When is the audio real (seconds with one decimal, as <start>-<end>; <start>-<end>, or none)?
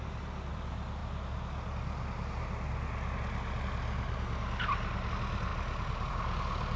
0.0-6.8